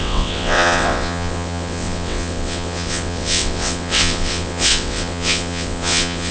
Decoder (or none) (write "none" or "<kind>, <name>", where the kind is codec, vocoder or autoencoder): vocoder, WaveNeXt